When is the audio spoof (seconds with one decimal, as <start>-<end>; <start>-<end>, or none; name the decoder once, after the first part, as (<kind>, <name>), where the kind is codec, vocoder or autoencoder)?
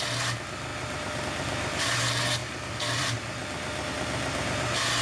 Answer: 2.4-3.9 (vocoder, BigVGAN v2)